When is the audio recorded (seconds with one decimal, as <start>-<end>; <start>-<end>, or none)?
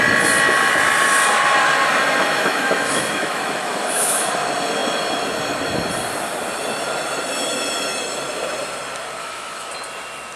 0.0-2.2; 4.3-9.2; 9.7-10.4